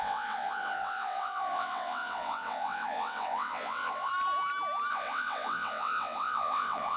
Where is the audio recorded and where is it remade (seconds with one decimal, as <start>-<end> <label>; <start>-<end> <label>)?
0.0-4.1 remade; 4.1-4.9 recorded; 4.9-7.0 remade